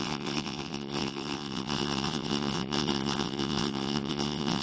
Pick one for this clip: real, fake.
fake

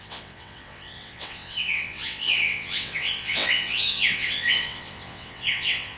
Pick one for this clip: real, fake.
fake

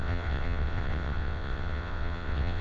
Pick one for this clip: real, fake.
fake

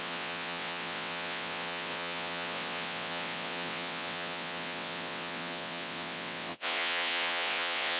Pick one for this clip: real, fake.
fake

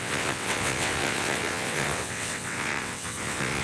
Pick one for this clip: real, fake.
fake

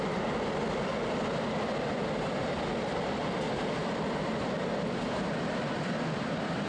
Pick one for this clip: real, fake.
real